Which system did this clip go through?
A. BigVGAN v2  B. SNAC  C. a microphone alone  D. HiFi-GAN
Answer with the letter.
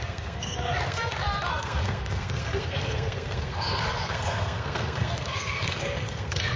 B